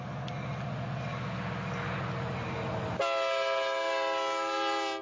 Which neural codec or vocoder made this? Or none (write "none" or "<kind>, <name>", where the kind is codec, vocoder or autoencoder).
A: none